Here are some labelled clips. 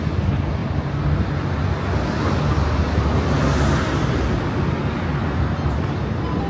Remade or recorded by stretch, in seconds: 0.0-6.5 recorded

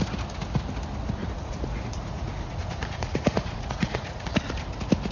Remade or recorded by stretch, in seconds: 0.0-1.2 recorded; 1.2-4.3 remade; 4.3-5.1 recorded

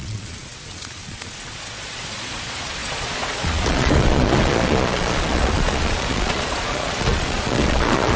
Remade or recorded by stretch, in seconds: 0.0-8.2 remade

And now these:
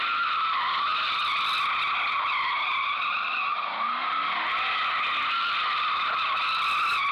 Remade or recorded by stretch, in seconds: 0.0-7.1 recorded